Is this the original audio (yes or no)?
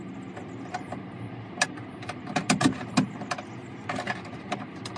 yes